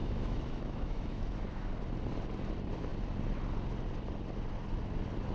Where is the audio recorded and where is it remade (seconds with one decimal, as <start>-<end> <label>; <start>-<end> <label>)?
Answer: 0.0-1.7 remade; 1.7-5.3 recorded